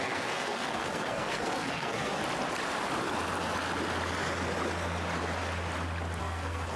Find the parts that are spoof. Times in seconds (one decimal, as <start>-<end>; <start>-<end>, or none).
0.0-2.2; 6.2-6.8